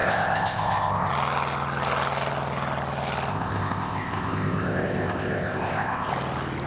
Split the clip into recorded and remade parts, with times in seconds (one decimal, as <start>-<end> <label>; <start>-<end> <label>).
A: 0.0-1.1 remade; 1.1-3.3 recorded; 3.3-6.1 remade; 6.1-6.7 recorded